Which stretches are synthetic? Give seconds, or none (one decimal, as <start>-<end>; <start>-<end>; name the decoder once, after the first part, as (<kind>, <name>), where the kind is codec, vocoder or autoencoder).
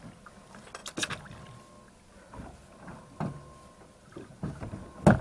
none